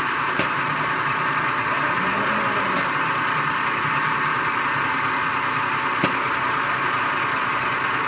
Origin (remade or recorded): recorded